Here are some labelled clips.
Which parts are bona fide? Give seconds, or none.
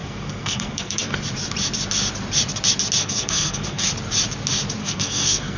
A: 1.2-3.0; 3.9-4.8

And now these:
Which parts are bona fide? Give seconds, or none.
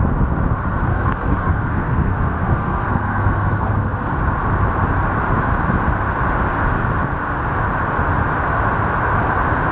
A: 0.0-0.9; 4.1-9.7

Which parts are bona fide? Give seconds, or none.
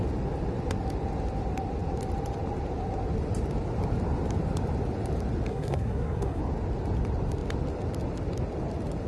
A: 0.0-5.5; 6.4-9.1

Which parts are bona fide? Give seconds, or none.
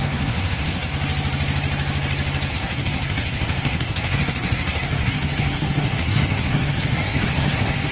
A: 0.9-2.5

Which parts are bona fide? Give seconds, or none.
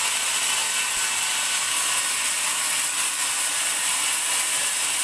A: 0.0-5.0